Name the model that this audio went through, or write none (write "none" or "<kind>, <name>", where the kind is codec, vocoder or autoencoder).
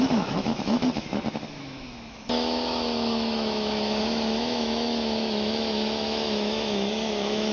autoencoder, DAC-VAE